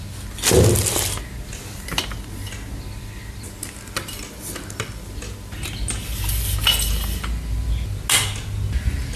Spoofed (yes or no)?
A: no